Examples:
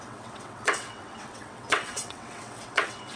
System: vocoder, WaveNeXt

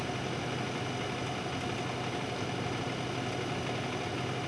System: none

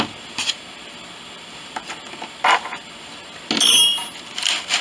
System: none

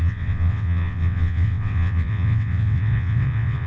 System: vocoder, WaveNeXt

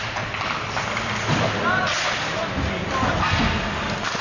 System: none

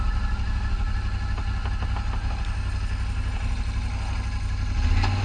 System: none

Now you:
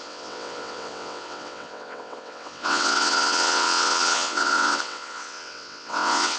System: vocoder, WaveNeXt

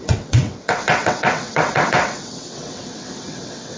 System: vocoder, WaveNeXt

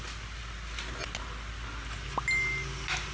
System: none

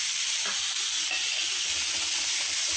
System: none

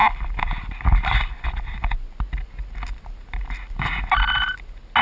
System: none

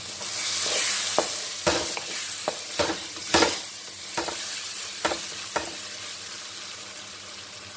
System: none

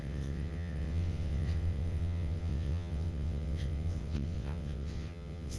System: vocoder, WaveNeXt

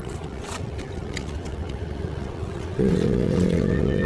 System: vocoder, WaveNeXt